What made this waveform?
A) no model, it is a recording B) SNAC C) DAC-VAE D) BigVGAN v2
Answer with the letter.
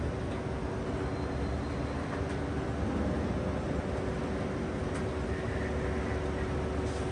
A